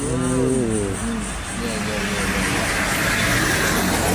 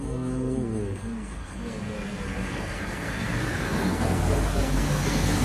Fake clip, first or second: second